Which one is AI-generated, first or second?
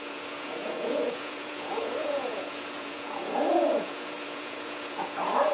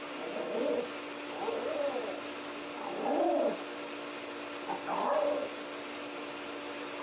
first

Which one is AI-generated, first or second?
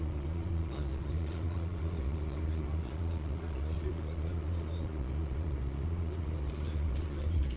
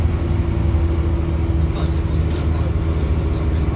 first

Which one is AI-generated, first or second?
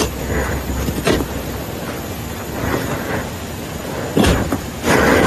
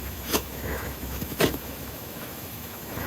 second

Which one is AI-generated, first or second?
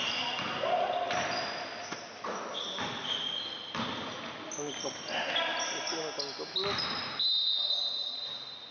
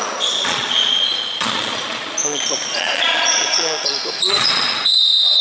second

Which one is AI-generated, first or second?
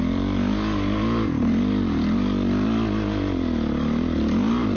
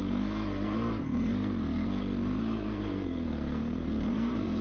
second